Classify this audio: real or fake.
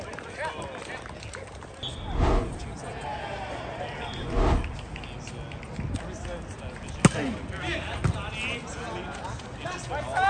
real